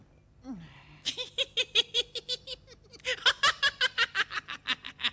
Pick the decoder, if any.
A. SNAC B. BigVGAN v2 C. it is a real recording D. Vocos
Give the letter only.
C